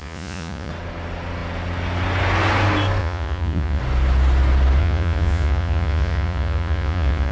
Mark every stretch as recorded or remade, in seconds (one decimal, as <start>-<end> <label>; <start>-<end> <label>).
0.0-0.7 remade; 0.7-3.0 recorded; 3.0-3.8 remade; 3.8-4.8 recorded; 4.8-7.3 remade